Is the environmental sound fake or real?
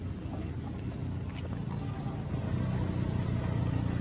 real